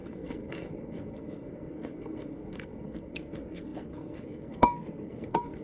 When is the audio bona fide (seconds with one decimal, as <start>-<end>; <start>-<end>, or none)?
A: none